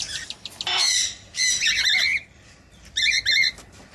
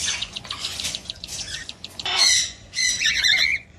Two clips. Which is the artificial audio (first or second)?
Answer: second